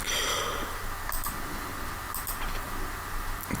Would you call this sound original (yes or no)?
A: yes